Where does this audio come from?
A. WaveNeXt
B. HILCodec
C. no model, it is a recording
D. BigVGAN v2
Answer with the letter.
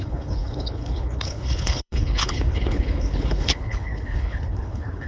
B